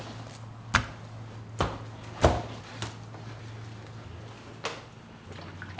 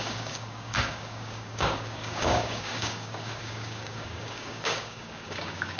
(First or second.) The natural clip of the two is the first